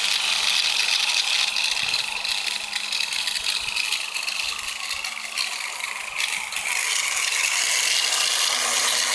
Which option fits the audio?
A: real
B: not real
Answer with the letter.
A